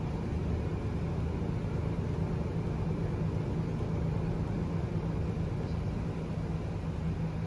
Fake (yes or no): no